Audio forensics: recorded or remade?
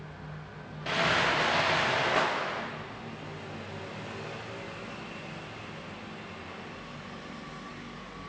recorded